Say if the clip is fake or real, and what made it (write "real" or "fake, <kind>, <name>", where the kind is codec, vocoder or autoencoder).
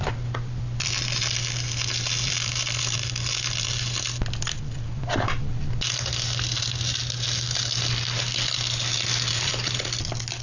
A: real